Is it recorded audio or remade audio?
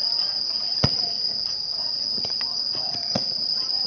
remade